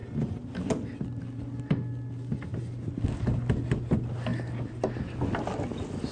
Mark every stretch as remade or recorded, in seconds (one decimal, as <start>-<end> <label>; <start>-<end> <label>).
0.0-6.1 recorded